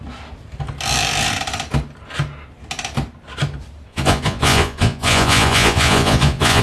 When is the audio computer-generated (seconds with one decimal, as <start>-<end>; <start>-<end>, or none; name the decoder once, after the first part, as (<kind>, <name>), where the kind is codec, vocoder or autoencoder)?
3.9-6.6 (vocoder, Vocos)